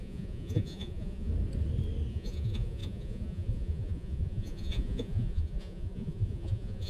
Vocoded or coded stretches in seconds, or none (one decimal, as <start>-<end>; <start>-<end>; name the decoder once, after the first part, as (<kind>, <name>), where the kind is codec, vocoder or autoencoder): 0.0-1.3 (vocoder, Vocos); 2.1-6.9